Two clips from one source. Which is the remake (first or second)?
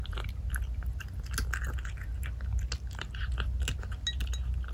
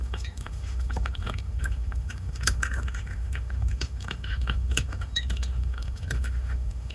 second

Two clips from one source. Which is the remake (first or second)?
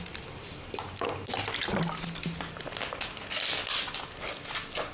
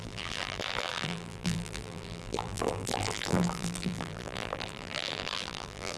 second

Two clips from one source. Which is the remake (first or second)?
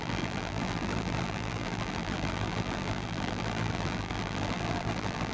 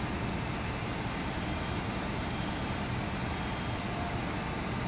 first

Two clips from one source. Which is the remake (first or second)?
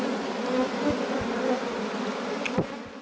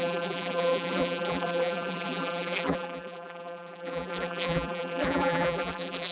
second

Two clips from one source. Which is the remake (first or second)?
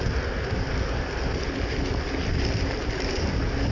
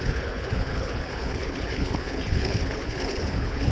second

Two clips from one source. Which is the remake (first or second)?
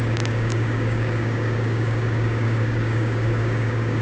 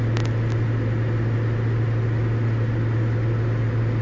first